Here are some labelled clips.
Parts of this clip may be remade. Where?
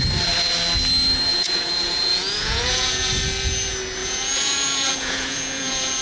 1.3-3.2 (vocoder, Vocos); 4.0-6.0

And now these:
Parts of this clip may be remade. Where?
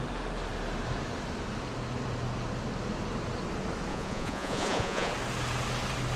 3.9-5.1 (vocoder, Vocos)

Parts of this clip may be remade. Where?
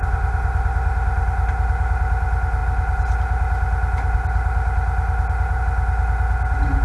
none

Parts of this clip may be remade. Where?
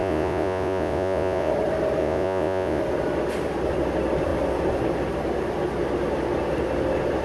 0.0-1.5 (vocoder, Vocos); 2.0-2.8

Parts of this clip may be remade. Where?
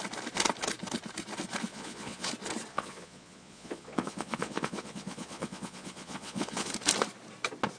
1.7-2.3 (vocoder, Vocos); 2.7-6.7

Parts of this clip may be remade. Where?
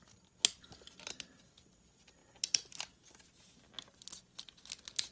none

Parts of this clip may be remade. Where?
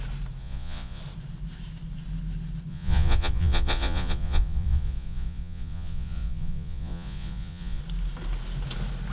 0.4-1.0 (vocoder, Vocos); 2.7-7.8